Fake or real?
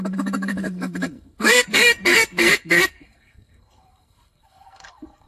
fake